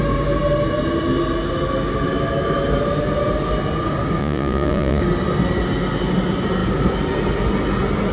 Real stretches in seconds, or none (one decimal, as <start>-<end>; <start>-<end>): 0.0-4.2; 5.0-8.1